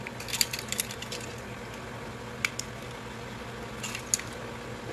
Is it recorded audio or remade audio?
recorded